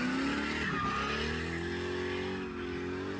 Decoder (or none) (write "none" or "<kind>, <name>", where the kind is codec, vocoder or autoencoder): none